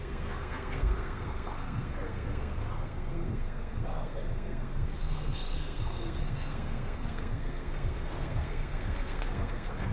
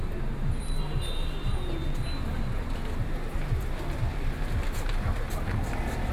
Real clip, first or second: second